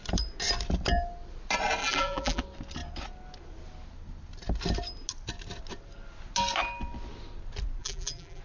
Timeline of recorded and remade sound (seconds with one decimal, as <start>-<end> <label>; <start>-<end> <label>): 0.0-1.8 recorded; 1.8-2.4 remade; 2.4-7.8 recorded; 7.8-8.4 remade